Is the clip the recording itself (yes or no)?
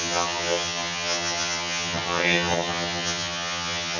no